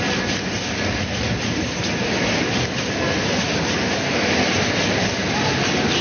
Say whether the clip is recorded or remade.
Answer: recorded